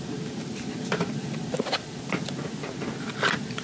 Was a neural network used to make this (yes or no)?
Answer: no